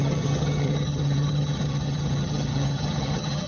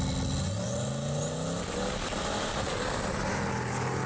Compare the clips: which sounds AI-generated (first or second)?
first